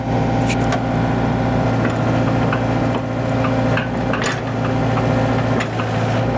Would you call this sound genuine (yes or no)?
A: yes